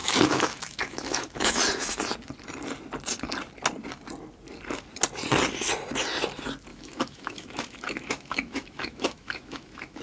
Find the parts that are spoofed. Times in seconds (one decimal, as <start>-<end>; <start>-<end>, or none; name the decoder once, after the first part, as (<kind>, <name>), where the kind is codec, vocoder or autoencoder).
0.0-1.6 (autoencoder, DAC-VAE); 6.7-10.0